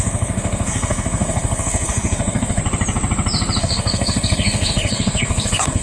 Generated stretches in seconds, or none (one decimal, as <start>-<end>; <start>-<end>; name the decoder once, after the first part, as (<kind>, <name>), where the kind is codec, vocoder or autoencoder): 0.0-2.6 (codec, SNAC); 3.6-5.8

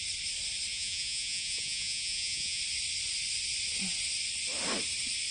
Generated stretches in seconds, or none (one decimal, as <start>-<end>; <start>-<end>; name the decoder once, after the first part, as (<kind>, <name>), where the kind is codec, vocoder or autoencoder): 0.7-2.6 (vocoder, Vocos)

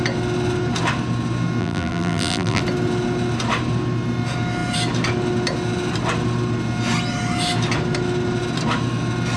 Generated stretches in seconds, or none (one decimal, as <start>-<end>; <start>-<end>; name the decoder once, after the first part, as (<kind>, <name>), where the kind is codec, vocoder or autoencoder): 1.6-2.6 (vocoder, BigVGAN v2)

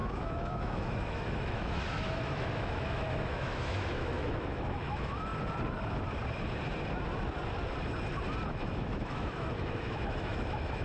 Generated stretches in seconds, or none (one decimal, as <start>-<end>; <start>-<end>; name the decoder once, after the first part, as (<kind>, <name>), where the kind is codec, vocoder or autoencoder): 0.0-5.3 (autoencoder, DAC-VAE); 8.5-10.8